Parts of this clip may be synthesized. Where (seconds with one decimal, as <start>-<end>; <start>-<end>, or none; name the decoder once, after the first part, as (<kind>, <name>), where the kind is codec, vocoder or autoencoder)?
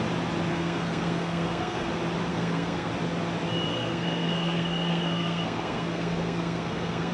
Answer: 0.5-1.9 (codec, SNAC); 2.3-2.9; 3.7-7.1